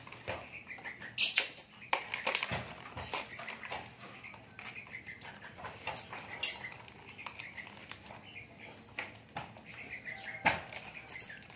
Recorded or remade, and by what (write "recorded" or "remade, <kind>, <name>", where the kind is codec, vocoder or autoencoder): recorded